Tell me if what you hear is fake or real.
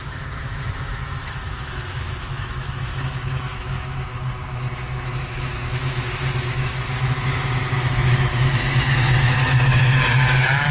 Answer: fake